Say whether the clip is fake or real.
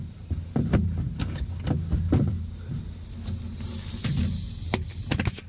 real